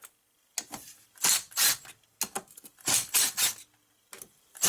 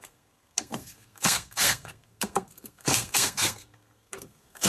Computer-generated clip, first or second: second